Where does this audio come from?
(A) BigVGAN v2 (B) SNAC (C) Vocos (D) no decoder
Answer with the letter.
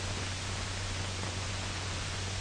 C